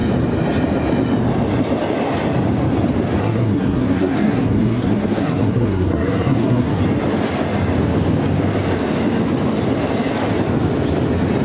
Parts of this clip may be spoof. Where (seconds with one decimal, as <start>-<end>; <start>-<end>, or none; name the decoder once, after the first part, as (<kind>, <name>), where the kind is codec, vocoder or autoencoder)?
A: 3.2-6.8 (codec, SNAC)